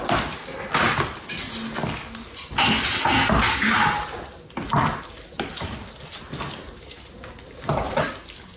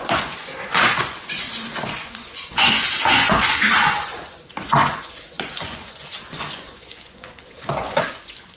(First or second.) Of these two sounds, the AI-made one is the second